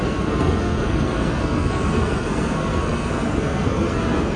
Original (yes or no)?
no